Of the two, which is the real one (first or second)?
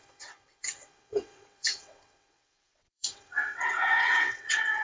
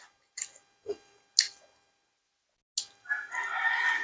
second